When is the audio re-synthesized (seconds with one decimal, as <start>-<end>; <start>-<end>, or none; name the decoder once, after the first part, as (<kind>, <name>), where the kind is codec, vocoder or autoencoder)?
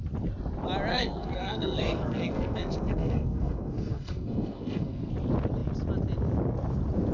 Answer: 0.9-5.1 (codec, SNAC)